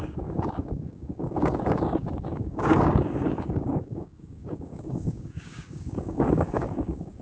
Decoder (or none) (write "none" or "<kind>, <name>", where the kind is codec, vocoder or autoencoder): codec, DAC